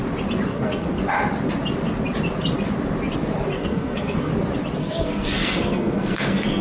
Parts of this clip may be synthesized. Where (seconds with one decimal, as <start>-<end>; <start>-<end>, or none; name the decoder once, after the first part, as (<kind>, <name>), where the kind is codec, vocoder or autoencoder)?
0.5-1.0 (codec, SNAC); 3.5-4.3; 4.8-6.6